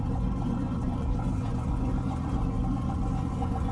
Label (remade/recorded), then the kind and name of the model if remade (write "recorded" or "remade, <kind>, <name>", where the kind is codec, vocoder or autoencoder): remade, vocoder, Vocos